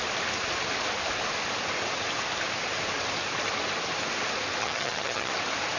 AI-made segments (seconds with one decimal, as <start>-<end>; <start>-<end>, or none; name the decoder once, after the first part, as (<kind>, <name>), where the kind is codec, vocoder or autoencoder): 4.6-5.3 (vocoder, HiFi-GAN)